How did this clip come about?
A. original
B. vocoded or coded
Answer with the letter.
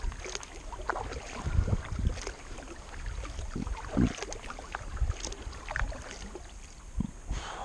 A